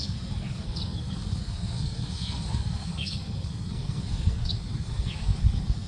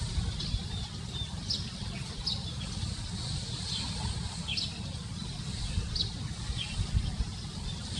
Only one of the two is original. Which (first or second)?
second